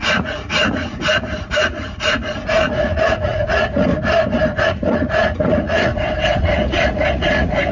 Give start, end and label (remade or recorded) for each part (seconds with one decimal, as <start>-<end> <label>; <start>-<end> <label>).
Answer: 0.0-3.9 remade; 3.9-4.6 recorded; 4.6-5.9 remade; 5.9-6.4 recorded; 6.4-7.7 remade